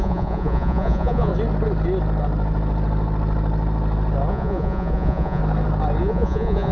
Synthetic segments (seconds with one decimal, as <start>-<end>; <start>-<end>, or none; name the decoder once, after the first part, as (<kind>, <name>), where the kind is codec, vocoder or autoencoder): 0.0-1.3 (vocoder, Vocos); 4.3-5.4; 6.0-6.7